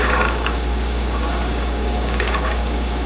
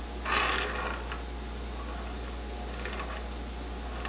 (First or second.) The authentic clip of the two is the second